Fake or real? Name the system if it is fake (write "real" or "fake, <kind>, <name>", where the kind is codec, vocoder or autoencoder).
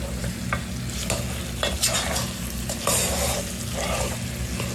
real